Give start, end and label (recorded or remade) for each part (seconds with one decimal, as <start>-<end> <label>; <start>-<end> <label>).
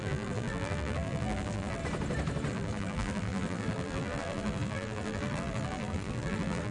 0.0-1.8 remade; 1.8-2.5 recorded; 2.5-6.7 remade